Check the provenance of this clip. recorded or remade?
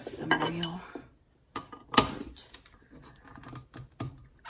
recorded